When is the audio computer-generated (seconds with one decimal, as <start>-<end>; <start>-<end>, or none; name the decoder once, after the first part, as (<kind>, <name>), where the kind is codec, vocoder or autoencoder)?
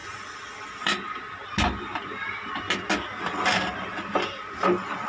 none